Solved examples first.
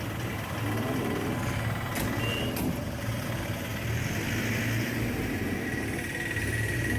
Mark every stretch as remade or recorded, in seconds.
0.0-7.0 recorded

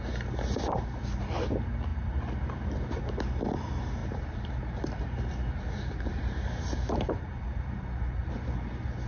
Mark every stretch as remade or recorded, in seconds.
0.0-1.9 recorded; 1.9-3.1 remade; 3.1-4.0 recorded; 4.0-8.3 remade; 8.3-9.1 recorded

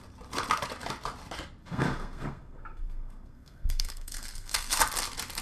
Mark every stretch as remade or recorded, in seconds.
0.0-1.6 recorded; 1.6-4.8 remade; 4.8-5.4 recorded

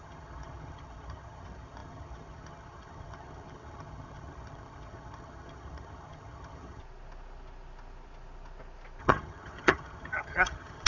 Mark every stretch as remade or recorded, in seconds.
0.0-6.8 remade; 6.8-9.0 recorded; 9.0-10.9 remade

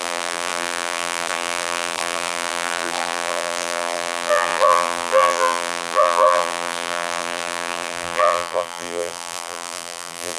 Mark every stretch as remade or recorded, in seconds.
0.0-10.4 remade

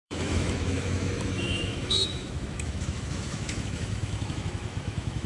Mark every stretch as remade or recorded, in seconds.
0.0-5.3 remade